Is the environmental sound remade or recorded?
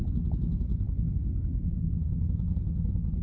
recorded